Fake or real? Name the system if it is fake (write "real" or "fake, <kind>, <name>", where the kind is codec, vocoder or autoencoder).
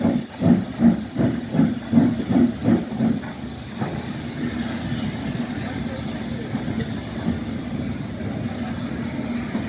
real